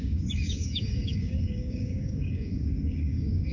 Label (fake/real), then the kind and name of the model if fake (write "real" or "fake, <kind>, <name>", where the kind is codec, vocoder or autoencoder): fake, codec, DAC